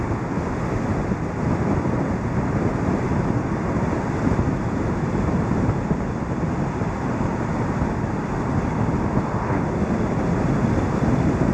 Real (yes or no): yes